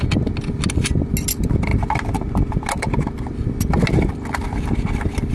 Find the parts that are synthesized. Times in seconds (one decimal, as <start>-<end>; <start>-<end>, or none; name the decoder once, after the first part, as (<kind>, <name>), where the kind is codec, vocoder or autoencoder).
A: none